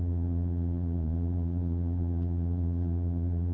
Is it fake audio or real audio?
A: fake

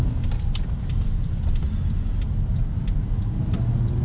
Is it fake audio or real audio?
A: real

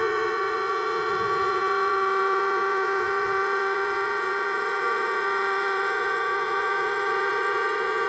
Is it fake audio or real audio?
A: fake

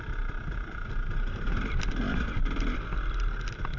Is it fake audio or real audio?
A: real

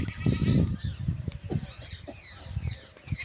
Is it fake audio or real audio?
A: real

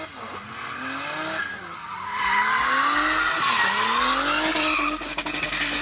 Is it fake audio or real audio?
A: real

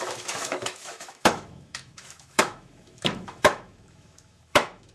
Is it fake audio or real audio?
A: fake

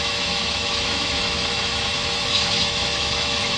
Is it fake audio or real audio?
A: fake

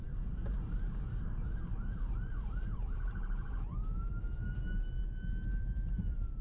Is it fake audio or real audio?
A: real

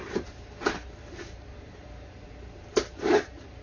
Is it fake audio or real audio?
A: real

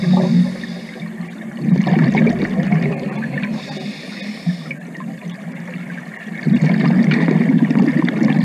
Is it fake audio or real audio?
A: real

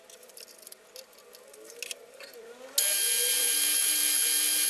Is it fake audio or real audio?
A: real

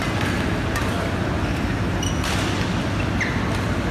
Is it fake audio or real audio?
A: real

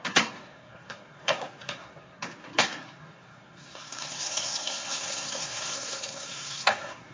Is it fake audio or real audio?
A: fake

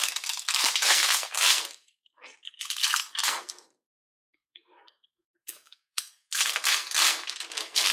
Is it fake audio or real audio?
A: fake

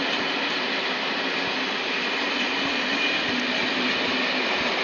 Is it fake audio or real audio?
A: real